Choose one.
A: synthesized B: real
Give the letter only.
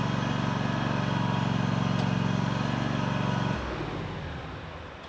B